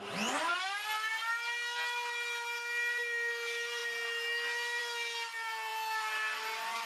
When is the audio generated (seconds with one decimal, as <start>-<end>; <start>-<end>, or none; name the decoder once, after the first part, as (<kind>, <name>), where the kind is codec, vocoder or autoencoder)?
none